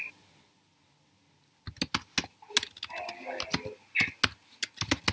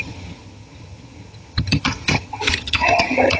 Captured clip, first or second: first